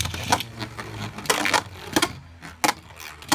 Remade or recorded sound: recorded